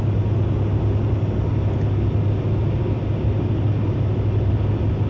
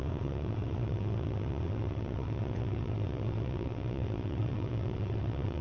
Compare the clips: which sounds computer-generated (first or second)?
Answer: second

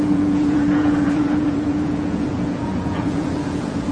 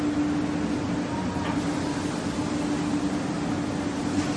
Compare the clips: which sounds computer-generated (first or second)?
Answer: first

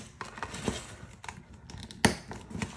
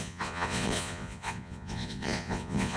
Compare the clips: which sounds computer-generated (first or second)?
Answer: second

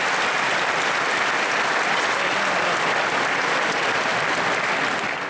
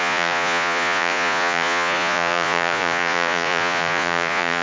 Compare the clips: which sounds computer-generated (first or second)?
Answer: second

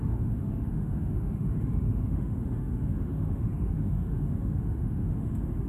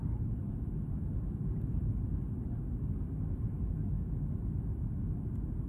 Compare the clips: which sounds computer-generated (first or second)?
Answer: first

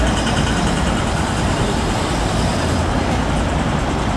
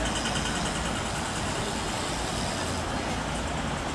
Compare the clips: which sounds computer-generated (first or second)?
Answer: first